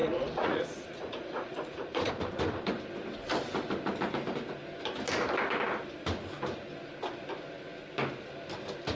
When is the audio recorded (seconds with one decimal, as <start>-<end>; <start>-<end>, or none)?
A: 2.1-8.9